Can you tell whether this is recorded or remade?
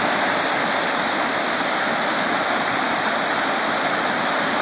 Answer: recorded